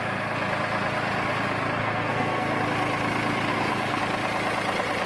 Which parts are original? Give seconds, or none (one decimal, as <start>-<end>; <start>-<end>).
0.0-1.8; 2.6-3.5; 4.0-5.1